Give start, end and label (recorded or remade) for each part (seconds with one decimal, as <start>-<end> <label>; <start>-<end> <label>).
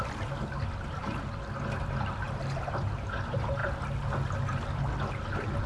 0.0-5.7 recorded